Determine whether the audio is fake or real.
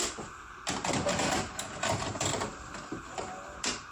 real